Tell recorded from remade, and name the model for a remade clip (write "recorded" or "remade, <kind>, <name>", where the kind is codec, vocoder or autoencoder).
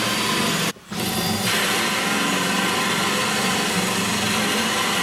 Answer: recorded